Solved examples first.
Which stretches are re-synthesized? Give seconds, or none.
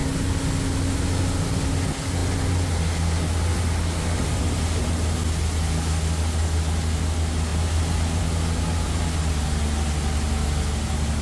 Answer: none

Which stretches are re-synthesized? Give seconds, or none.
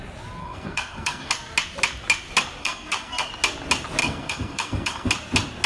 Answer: 0.4-1.3 (codec, SNAC); 2.6-3.3; 4.0-5.1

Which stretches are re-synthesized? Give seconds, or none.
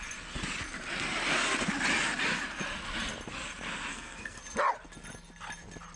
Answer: 3.9-4.4 (codec, SNAC)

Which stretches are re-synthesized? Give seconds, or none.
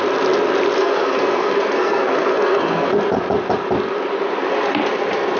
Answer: 0.8-2.9 (codec, SNAC)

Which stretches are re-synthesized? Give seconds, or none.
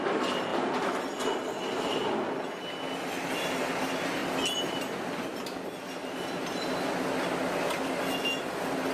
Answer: none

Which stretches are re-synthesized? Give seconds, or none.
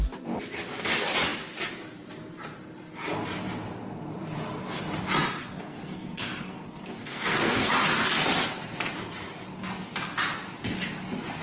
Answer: 5.4-7.7 (codec, SNAC)